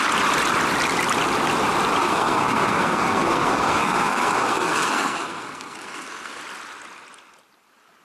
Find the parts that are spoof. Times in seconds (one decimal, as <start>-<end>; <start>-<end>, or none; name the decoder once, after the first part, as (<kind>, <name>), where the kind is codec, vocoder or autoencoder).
2.0-6.4 (codec, SNAC)